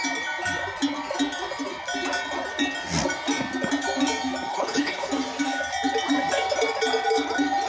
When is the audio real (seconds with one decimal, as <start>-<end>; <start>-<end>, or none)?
0.0-4.5; 5.1-7.7